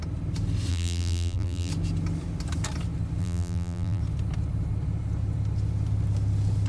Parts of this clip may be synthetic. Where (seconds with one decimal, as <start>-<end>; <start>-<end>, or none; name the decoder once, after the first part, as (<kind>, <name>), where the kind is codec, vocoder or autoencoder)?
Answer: 0.7-1.7 (vocoder, BigVGAN v2); 3.2-4.0